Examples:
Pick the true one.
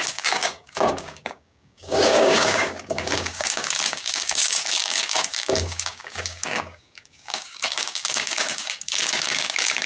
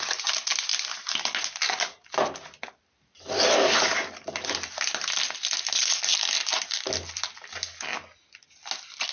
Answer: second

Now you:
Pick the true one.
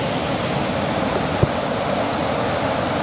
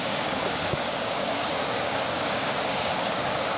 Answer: first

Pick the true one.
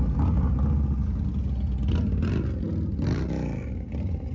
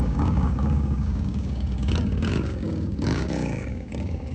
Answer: first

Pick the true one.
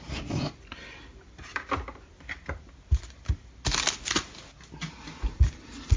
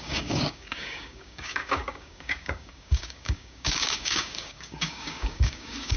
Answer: first